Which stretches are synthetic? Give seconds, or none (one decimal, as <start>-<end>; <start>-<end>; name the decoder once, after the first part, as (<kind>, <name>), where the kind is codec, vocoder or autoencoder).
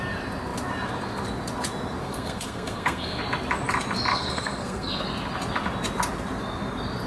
2.0-3.2 (codec, SNAC); 4.1-5.0